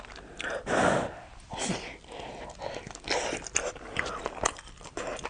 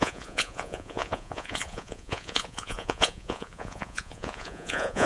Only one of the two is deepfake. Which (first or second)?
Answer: second